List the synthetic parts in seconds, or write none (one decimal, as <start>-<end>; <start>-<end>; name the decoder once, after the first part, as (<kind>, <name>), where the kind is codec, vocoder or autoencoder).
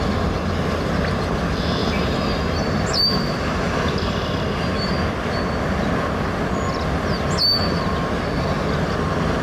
1.8-3.7 (vocoder, BigVGAN v2)